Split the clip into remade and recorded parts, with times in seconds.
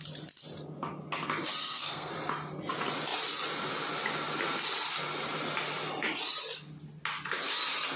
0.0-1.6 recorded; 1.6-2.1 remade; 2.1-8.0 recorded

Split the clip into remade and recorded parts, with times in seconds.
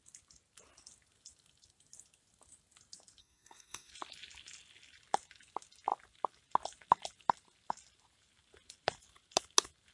0.0-3.2 recorded; 3.2-3.9 remade; 3.9-9.9 recorded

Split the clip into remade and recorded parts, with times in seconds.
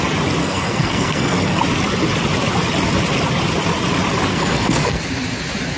0.0-0.4 recorded; 0.4-1.6 remade; 1.6-4.3 recorded; 4.3-5.0 remade; 5.0-5.8 recorded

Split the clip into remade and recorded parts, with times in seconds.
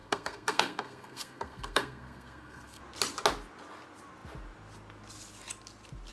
0.0-2.8 remade; 2.8-6.1 recorded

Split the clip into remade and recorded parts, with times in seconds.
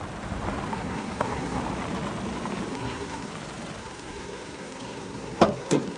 0.0-0.7 recorded; 0.7-1.6 remade; 1.6-2.7 recorded; 2.7-3.3 remade; 3.3-3.8 recorded; 3.8-6.0 remade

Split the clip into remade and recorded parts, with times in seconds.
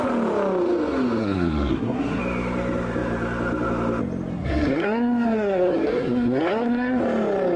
0.0-1.2 recorded; 1.2-2.2 remade; 2.2-4.3 recorded; 4.3-7.0 remade; 7.0-7.6 recorded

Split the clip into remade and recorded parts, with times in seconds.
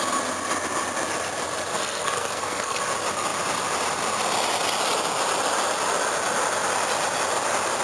0.0-1.7 recorded; 1.7-2.8 remade; 2.8-7.8 recorded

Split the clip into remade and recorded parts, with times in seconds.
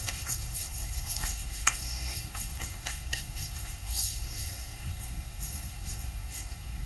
0.0-6.9 remade